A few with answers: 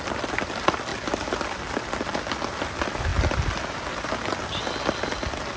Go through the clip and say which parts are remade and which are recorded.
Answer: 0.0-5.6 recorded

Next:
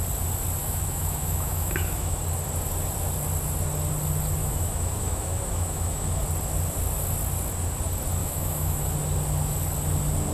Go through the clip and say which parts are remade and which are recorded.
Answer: 0.0-0.6 recorded; 0.6-2.2 remade; 2.2-4.4 recorded; 4.4-6.2 remade; 6.2-8.2 recorded; 8.2-8.9 remade; 8.9-10.3 recorded

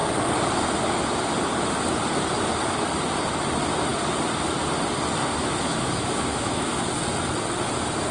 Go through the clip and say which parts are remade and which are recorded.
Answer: 0.0-5.2 recorded; 5.2-6.8 remade; 6.8-8.1 recorded

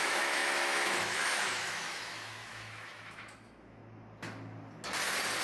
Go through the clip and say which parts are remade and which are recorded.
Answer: 0.0-3.8 remade; 3.8-5.4 recorded

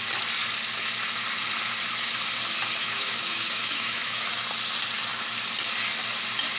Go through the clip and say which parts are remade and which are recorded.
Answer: 0.0-2.8 recorded; 2.8-4.4 remade; 4.4-6.6 recorded

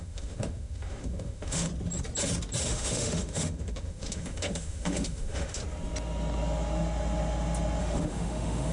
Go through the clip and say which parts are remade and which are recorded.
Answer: 0.0-1.7 remade; 1.7-2.6 recorded; 2.6-5.6 remade; 5.6-7.8 recorded; 7.8-8.7 remade